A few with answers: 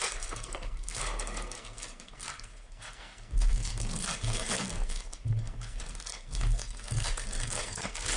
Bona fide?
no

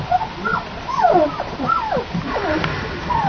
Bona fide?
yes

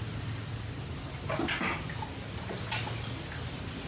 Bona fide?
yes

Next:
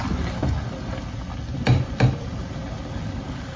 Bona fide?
yes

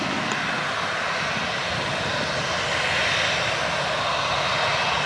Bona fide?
yes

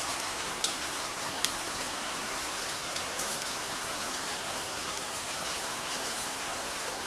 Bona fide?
no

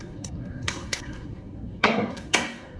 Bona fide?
no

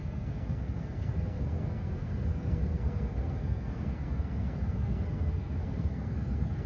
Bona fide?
no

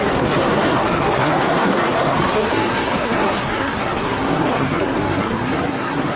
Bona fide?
no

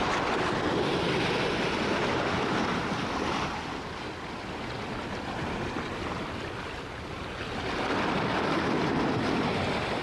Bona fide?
yes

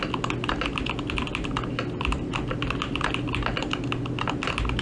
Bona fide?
yes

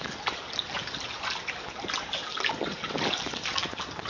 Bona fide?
yes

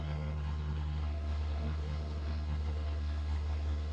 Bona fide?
no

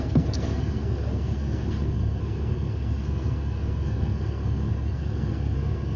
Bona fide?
no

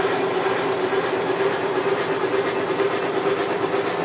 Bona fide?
yes